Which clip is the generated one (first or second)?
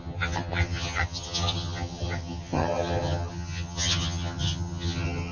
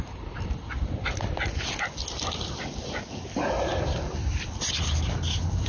first